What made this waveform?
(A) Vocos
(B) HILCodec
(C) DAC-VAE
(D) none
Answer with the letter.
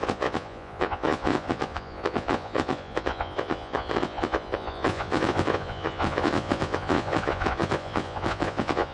A